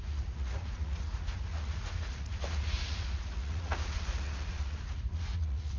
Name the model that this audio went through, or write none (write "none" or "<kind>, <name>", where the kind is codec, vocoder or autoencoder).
vocoder, Vocos